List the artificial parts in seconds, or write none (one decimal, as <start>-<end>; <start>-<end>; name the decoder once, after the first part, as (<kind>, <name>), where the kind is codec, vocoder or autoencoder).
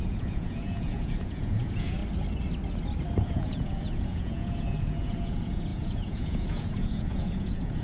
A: 0.0-2.0 (vocoder, Vocos); 3.2-7.8